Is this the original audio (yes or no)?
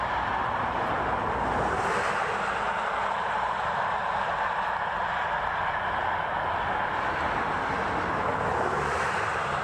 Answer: yes